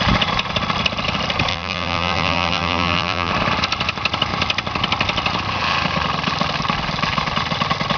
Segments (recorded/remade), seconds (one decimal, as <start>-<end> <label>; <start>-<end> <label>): 0.0-1.5 recorded; 1.5-3.3 remade; 3.3-8.0 recorded